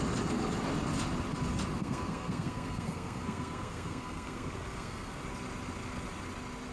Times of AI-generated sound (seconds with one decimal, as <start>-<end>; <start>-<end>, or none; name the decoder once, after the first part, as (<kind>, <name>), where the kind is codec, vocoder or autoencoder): 1.8-5.2 (codec, SNAC)